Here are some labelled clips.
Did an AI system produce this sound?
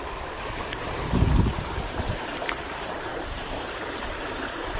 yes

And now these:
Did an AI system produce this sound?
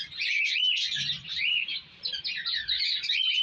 yes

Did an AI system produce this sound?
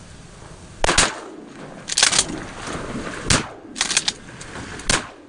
no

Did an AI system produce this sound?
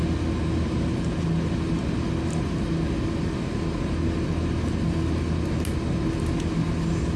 no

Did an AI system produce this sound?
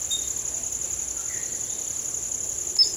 no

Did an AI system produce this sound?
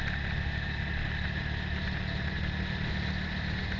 no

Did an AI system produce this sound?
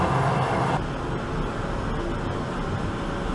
no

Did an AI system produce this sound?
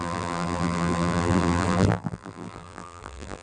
yes